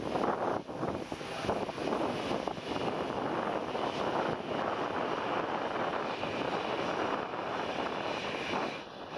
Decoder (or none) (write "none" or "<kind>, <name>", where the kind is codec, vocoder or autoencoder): none